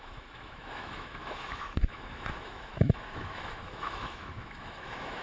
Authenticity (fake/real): fake